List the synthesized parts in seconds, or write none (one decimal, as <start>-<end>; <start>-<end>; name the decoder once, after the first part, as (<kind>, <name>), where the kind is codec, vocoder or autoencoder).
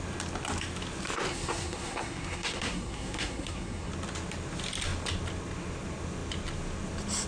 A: 1.3-3.9 (codec, SNAC)